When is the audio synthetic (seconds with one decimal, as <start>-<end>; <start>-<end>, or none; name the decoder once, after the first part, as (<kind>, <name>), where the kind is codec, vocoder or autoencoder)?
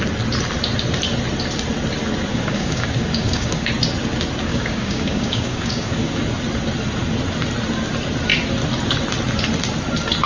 2.3-3.7 (codec, DAC); 4.4-6.2